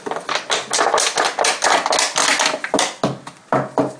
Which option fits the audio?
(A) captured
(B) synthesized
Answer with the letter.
A